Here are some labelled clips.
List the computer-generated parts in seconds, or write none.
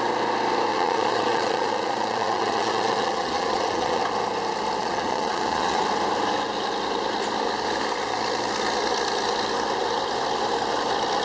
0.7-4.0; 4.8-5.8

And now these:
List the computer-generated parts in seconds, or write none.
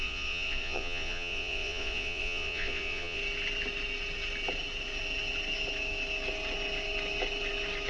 0.0-3.2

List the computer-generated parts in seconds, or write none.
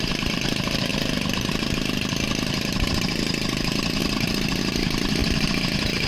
0.0-6.1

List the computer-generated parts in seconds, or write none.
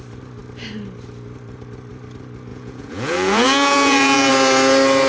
2.5-4.3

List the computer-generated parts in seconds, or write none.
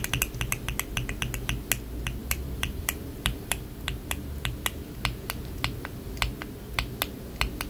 2.2-4.0